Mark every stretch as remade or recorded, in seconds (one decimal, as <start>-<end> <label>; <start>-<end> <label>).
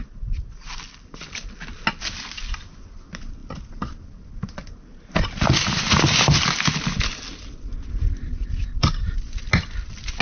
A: 0.0-10.2 recorded